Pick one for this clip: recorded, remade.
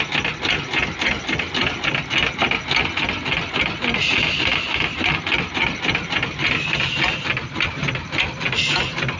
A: recorded